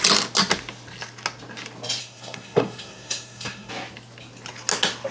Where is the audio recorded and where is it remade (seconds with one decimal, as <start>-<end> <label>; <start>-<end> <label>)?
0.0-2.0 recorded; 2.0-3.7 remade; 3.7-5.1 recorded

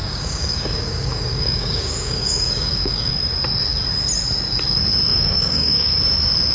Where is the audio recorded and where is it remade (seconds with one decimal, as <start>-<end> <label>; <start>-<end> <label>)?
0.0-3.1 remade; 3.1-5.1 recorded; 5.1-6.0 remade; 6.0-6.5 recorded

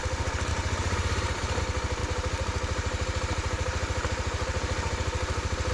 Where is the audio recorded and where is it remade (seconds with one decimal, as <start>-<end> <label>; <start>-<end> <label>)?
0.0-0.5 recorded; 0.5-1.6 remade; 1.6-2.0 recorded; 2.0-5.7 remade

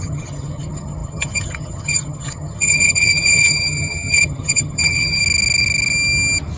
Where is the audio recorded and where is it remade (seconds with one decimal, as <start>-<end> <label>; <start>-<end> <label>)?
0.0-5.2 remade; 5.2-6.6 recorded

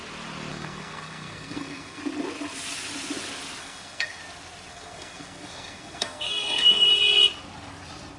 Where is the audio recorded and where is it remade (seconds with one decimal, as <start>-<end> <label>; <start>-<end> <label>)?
0.0-0.5 recorded; 0.5-2.0 remade; 2.0-3.6 recorded; 3.6-4.2 remade; 4.2-4.7 recorded; 4.7-6.9 remade; 6.9-8.2 recorded

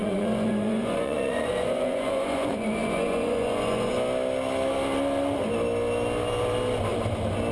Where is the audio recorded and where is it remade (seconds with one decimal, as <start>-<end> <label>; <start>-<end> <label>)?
0.0-3.9 remade; 3.9-7.5 recorded

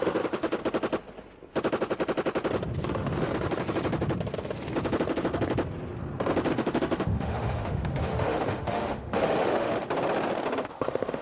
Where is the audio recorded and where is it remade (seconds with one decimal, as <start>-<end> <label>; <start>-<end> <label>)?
0.0-0.6 remade; 0.6-2.8 recorded; 2.8-3.3 remade; 3.3-6.5 recorded; 6.5-9.7 remade; 9.7-10.6 recorded; 10.6-11.2 remade